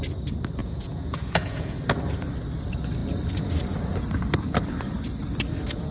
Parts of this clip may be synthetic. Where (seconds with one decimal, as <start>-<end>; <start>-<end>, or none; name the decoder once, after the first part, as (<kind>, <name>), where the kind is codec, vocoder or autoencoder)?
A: 0.6-1.8 (vocoder, Vocos)